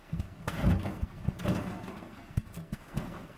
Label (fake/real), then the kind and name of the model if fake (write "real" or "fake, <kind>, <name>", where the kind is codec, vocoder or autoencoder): fake, codec, SNAC